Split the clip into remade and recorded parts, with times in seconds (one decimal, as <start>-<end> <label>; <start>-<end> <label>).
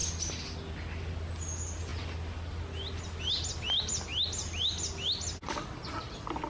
0.0-6.5 recorded